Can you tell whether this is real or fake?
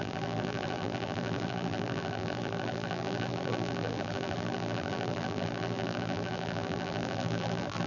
fake